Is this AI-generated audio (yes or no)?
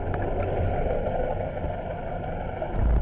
no